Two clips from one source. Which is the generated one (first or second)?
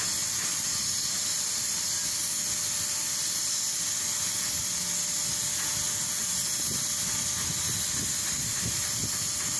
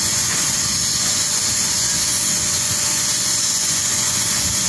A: second